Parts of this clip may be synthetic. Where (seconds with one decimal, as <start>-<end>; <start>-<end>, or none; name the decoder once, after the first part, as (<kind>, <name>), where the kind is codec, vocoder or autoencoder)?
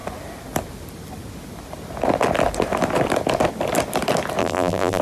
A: 4.4-5.0 (vocoder, BigVGAN v2)